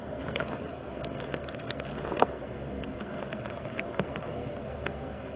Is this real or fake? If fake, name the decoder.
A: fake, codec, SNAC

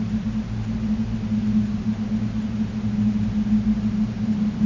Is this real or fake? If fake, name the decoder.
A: real